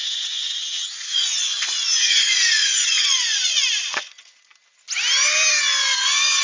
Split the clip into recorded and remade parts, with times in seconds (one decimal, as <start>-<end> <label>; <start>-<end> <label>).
0.0-4.5 remade; 4.5-5.5 recorded; 5.5-6.4 remade